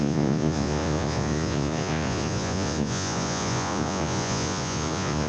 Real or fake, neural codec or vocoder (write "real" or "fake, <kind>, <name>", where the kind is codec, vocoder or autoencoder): fake, vocoder, Vocos